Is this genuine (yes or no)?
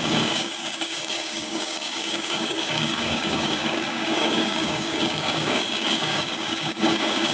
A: no